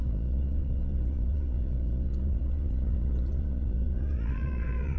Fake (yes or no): yes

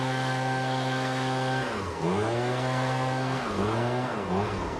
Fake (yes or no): yes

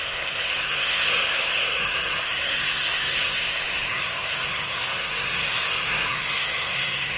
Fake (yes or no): yes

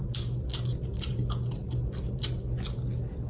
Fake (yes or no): no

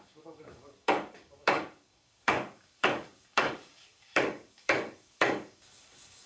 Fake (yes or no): yes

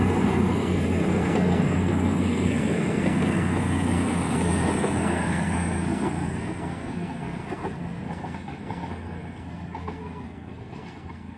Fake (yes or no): yes